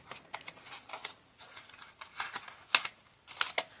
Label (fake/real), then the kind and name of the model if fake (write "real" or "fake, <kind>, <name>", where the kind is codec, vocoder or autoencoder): real